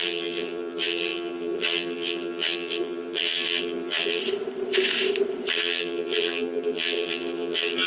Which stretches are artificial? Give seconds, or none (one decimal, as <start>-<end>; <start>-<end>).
0.0-4.2; 5.5-7.9